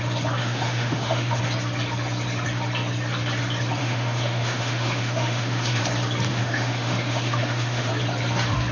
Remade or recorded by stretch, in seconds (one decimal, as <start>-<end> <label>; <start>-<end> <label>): 0.0-0.4 recorded; 0.4-1.4 remade; 1.4-3.8 recorded; 3.8-5.8 remade; 5.8-6.3 recorded; 6.3-7.9 remade; 7.9-8.7 recorded